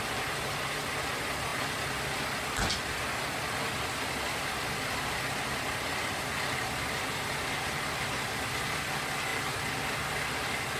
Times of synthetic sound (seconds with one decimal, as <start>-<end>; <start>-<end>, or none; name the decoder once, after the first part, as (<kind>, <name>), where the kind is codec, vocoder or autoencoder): none